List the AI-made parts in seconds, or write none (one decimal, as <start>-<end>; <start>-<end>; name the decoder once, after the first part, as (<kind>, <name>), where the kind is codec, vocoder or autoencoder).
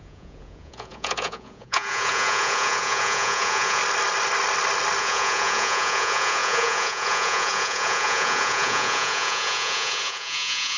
0.0-3.8 (vocoder, Vocos); 5.0-10.8